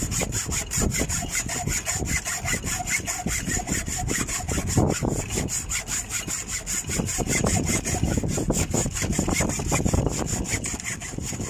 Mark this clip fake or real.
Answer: real